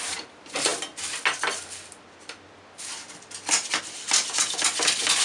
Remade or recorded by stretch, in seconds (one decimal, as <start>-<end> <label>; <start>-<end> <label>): 0.0-5.2 recorded